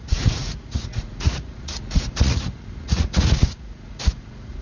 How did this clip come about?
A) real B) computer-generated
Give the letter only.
B